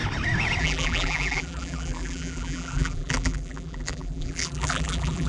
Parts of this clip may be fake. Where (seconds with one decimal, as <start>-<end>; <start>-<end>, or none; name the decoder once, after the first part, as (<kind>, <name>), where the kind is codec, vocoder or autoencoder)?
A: 0.6-5.3 (vocoder, BigVGAN v2)